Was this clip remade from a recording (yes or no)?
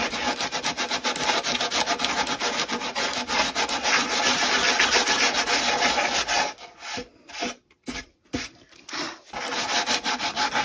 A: no